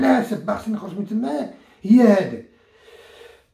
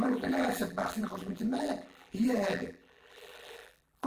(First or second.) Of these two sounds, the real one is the first